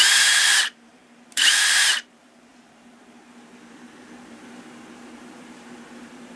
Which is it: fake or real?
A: fake